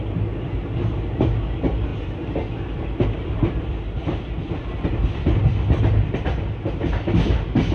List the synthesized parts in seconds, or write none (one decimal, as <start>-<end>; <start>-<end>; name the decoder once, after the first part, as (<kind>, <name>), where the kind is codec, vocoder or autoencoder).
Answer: none